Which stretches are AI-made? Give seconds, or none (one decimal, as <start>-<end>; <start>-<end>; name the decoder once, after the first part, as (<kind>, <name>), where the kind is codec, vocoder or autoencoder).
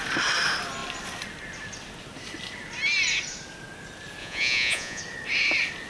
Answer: 4.2-5.0 (vocoder, Vocos)